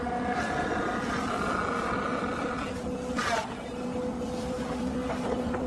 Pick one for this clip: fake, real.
real